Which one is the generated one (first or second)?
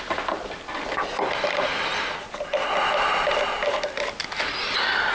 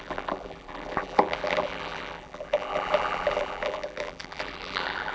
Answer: second